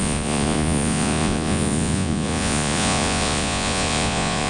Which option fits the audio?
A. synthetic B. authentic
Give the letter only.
A